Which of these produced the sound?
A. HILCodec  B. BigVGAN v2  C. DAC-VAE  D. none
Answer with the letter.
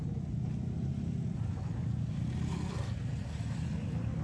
D